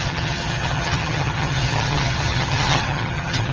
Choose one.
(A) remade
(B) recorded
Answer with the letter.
A